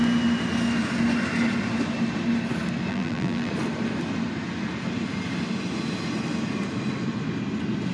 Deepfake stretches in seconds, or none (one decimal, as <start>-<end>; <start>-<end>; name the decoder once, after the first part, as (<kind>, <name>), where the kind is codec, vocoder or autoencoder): 2.9-3.5 (vocoder, BigVGAN v2)